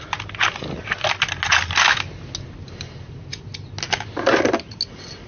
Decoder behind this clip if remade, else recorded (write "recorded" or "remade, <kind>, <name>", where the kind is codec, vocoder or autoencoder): recorded